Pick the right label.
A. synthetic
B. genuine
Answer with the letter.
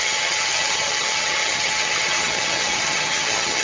A